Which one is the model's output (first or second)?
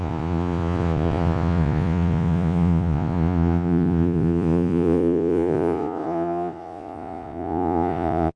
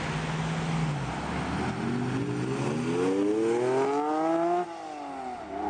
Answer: first